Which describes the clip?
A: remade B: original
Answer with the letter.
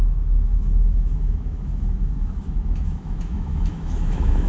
A